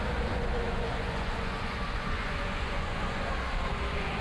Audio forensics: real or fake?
fake